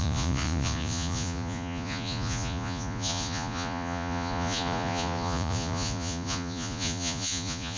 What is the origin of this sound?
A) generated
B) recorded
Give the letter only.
A